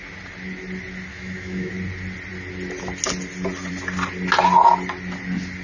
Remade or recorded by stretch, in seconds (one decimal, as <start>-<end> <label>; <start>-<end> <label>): 0.0-1.1 recorded; 1.1-1.7 remade; 1.7-5.6 recorded